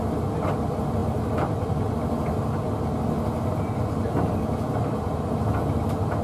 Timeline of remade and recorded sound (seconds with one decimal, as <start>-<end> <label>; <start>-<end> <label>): 0.0-1.0 recorded; 1.0-1.7 remade; 1.7-6.2 recorded